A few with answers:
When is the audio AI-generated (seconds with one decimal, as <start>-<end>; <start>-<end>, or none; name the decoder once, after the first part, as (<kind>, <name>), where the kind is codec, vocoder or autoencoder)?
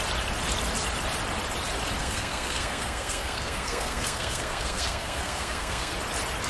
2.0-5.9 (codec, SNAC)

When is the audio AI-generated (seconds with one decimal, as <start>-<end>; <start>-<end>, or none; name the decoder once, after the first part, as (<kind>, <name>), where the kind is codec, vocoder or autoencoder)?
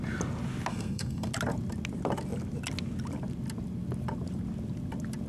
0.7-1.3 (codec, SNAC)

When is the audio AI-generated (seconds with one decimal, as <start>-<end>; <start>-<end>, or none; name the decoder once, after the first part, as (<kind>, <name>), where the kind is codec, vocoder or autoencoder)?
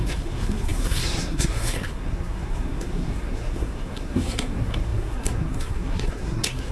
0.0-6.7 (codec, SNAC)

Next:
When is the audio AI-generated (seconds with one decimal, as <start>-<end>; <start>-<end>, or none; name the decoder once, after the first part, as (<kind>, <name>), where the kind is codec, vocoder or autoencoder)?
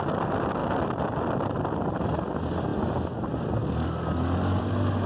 none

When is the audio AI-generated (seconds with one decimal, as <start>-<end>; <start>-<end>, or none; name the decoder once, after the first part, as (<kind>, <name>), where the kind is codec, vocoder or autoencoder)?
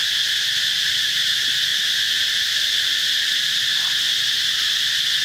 none